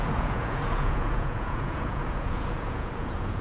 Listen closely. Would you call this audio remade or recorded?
remade